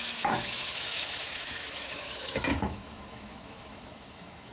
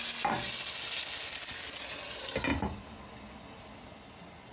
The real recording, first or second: second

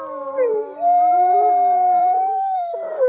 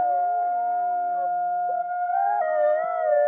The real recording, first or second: second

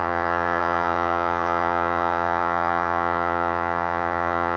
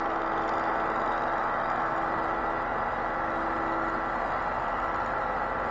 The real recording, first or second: second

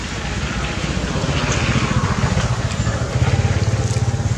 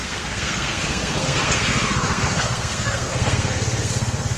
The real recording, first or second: first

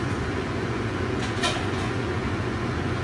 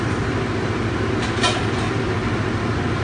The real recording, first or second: second